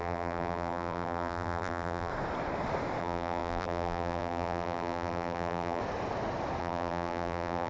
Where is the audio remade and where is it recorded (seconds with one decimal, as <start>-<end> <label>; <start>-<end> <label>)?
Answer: 0.0-2.1 remade; 2.1-3.0 recorded; 3.0-5.8 remade; 5.8-6.6 recorded; 6.6-7.7 remade